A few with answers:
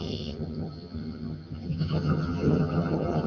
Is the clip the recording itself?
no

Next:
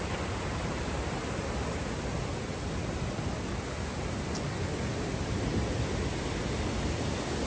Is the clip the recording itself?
yes